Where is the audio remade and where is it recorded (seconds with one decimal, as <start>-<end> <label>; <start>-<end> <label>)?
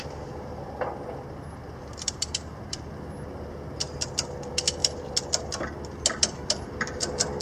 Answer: 0.0-7.4 recorded